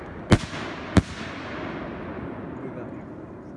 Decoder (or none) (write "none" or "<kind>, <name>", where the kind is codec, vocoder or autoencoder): none